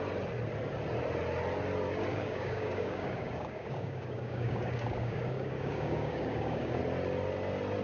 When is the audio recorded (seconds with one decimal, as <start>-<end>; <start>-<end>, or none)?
0.0-2.1; 6.8-7.8